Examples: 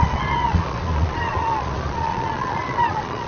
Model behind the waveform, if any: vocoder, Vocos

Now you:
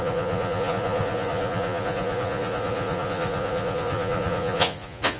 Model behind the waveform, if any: vocoder, Vocos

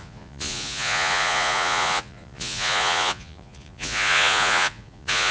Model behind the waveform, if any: vocoder, Vocos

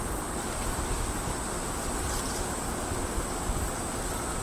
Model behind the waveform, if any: none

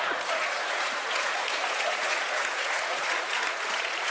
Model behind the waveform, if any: vocoder, Vocos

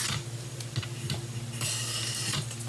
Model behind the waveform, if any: none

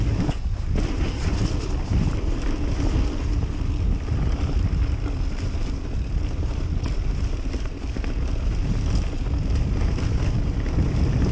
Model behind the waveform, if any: none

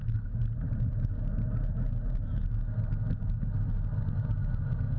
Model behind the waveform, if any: none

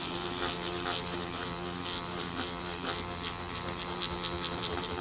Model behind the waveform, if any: none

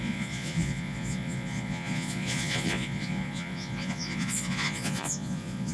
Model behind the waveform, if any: vocoder, Vocos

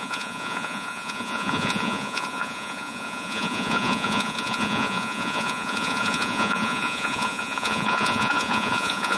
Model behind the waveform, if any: vocoder, Vocos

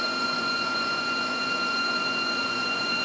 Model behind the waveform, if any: vocoder, Vocos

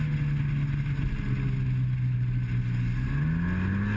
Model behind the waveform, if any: none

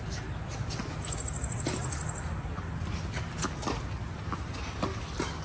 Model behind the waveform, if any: none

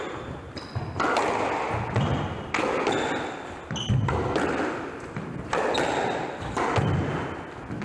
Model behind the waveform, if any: none